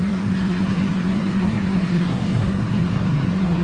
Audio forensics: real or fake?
fake